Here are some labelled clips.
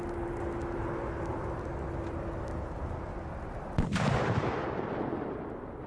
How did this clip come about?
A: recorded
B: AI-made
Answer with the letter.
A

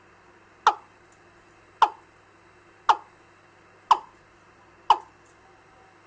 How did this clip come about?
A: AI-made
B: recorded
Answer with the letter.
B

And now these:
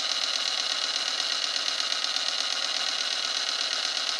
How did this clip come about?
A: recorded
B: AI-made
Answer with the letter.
A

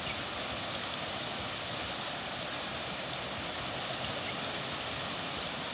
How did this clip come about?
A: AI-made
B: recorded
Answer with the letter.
B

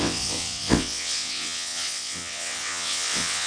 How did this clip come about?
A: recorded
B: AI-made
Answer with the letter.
B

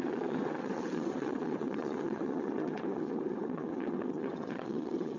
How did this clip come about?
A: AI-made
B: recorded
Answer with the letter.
A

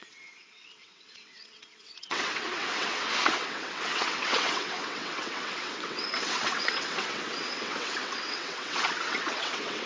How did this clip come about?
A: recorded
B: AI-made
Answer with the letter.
B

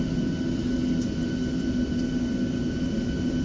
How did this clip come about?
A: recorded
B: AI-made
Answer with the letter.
A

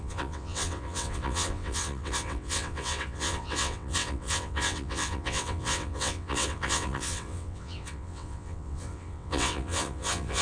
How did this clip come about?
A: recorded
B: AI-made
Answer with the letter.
B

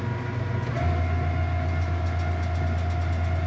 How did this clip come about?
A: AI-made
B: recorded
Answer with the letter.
B